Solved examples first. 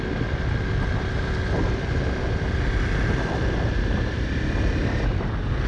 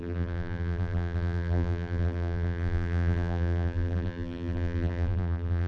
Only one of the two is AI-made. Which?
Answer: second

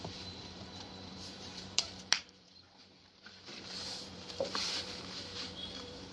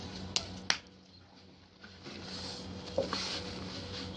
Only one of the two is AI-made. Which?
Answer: first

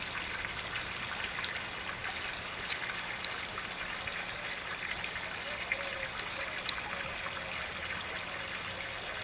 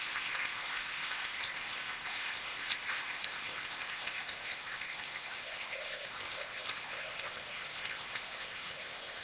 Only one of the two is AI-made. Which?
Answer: second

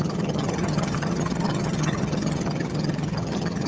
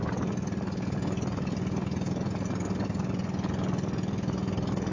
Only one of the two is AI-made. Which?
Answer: first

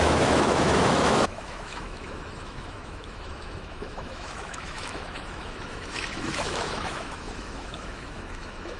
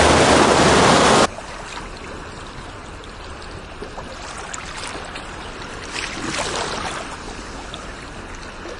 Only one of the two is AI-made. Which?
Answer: first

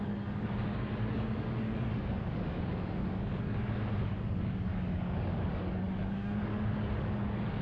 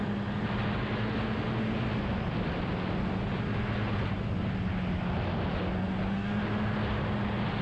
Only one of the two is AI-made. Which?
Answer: first